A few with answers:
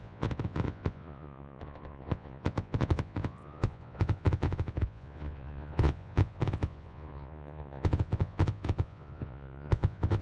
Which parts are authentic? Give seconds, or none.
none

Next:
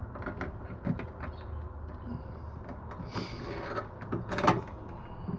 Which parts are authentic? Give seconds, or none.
0.0-5.4